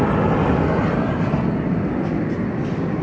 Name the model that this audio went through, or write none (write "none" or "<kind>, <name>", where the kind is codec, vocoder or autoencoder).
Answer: none